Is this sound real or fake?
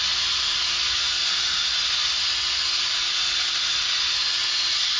real